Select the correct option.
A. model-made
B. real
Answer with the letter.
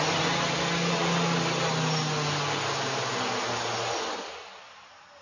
B